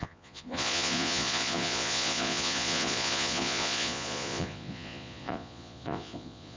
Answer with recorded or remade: remade